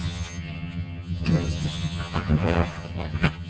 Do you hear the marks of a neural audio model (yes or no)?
yes